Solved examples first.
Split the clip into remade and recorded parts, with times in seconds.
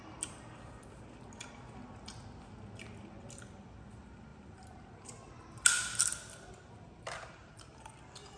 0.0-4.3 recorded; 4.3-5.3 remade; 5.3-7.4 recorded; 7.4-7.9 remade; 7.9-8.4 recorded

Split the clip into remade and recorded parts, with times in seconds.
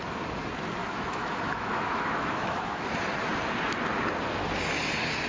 0.0-0.8 recorded; 0.8-2.9 remade; 2.9-5.3 recorded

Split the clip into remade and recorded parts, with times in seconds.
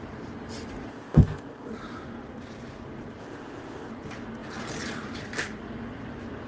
0.0-0.9 recorded; 0.9-1.7 remade; 1.7-3.2 recorded; 3.2-3.9 remade; 3.9-6.5 recorded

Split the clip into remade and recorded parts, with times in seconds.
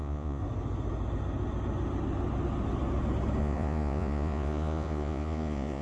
0.0-0.4 remade; 0.4-3.4 recorded; 3.4-5.8 remade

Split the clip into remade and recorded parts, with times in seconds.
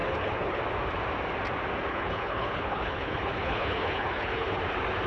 0.0-0.6 remade; 0.6-1.9 recorded; 1.9-4.6 remade; 4.6-5.1 recorded